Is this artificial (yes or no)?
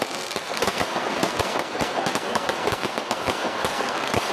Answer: yes